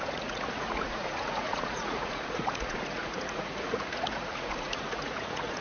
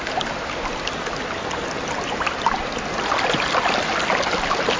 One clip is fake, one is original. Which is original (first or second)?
second